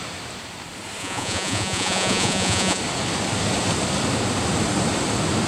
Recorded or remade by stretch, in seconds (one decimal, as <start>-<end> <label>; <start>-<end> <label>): 0.0-1.0 recorded; 1.0-2.8 remade; 2.8-5.5 recorded